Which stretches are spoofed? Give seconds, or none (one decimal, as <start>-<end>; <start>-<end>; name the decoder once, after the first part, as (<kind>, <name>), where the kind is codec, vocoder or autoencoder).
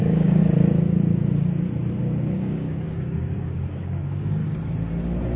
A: 0.0-0.4 (codec, DAC); 2.0-4.4